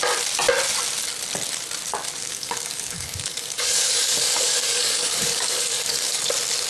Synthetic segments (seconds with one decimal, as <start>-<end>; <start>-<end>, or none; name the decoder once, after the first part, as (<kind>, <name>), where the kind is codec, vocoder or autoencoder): 2.2-6.2 (codec, DAC)